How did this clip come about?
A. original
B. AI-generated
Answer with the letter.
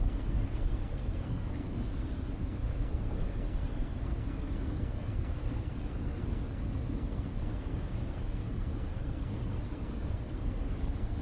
B